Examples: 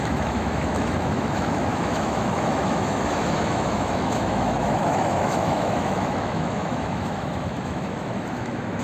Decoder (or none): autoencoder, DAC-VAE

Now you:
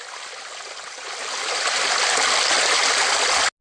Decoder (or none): none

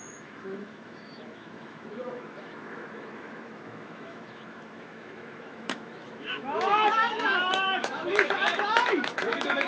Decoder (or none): autoencoder, DAC-VAE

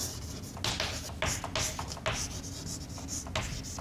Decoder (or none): none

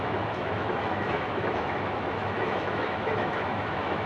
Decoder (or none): autoencoder, DAC-VAE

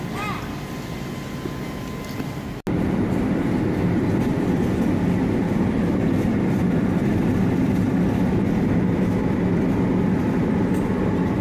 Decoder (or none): none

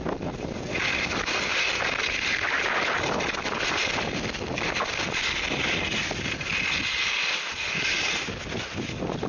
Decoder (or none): none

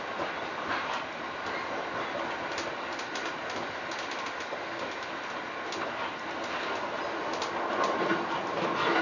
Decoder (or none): none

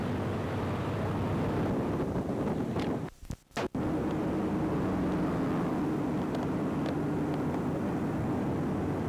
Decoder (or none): none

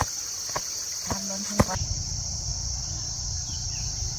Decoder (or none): none